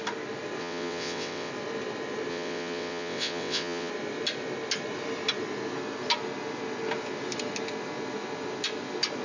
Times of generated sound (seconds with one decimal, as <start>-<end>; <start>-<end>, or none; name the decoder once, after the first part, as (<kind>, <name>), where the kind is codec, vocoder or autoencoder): 0.6-1.5 (vocoder, WaveNeXt); 2.3-3.9